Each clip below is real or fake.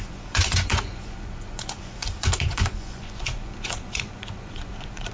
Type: fake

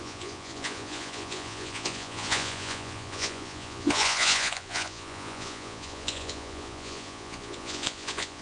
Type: fake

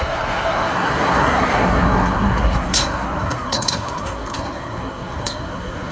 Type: fake